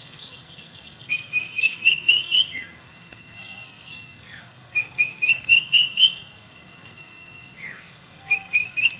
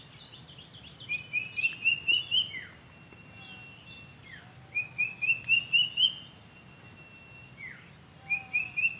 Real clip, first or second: second